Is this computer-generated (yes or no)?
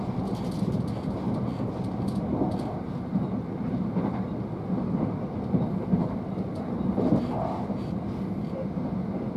no